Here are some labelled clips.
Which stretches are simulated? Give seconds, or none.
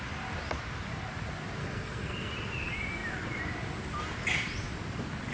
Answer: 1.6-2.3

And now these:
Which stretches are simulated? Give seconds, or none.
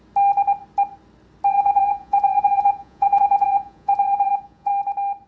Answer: 1.5-4.7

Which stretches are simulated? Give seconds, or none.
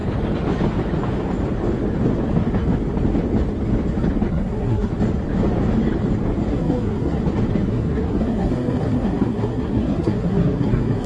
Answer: 4.3-4.9; 6.5-7.2; 7.7-11.1